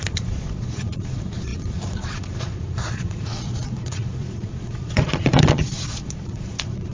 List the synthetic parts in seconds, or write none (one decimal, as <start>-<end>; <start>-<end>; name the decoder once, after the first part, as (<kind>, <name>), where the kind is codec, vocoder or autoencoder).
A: 0.0-6.9 (vocoder, Vocos)